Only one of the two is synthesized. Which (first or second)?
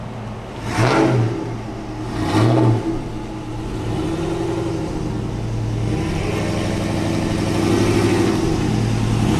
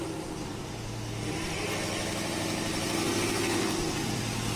second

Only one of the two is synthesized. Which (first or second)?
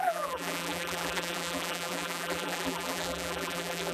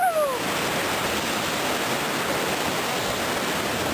first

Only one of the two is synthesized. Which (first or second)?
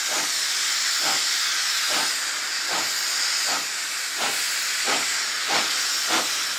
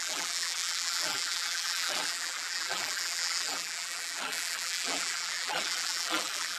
second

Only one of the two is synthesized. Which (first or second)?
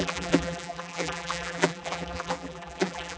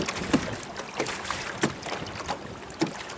first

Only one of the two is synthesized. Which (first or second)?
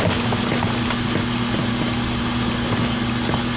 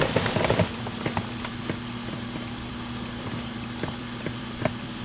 second